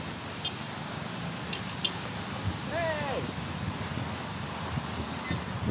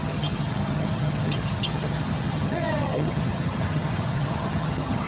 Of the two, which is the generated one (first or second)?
second